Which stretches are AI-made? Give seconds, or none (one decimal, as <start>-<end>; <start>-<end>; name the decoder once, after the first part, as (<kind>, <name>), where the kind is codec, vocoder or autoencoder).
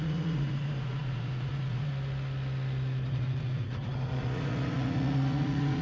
0.0-1.9 (vocoder, Vocos); 3.1-5.8